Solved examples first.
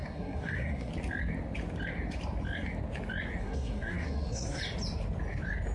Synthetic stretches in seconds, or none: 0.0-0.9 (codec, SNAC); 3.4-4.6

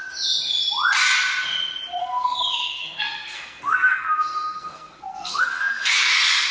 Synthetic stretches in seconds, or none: 2.0-5.9 (codec, SNAC)

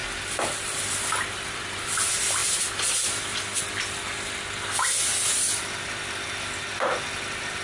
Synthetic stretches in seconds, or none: none

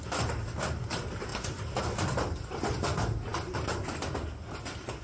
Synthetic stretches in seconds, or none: none

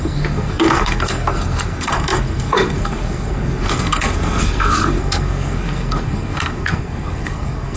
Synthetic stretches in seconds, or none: 0.0-7.8 (codec, SNAC)

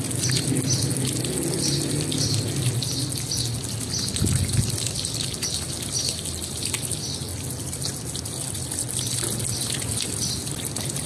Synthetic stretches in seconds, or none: none